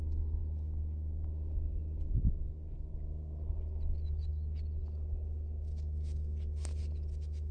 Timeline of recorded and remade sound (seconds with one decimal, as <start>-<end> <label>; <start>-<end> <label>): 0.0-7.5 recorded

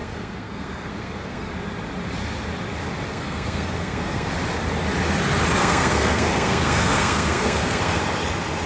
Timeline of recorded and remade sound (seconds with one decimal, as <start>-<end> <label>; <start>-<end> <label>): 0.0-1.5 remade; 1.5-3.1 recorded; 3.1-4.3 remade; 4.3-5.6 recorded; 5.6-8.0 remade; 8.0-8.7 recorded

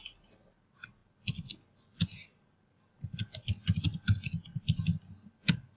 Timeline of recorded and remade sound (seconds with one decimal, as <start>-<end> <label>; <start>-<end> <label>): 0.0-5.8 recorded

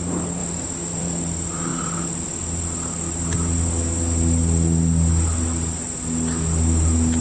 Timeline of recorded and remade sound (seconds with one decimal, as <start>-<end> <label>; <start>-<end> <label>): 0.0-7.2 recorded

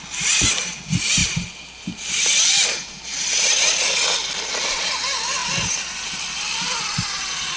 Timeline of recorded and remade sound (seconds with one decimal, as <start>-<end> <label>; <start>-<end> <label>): 0.0-7.6 recorded

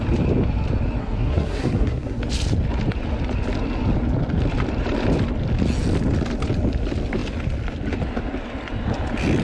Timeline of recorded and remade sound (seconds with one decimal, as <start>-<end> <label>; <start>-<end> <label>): 0.0-1.0 recorded; 1.0-2.2 remade; 2.2-9.4 recorded

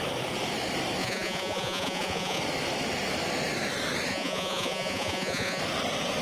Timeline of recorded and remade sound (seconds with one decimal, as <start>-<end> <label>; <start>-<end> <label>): 0.0-1.0 recorded; 1.0-2.4 remade; 2.4-4.1 recorded; 4.1-5.6 remade; 5.6-6.2 recorded